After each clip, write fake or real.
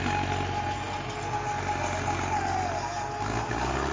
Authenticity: real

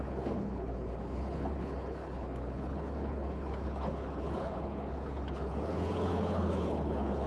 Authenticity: fake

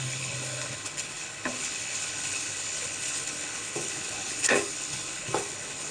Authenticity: fake